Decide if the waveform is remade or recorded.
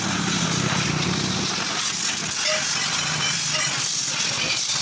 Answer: recorded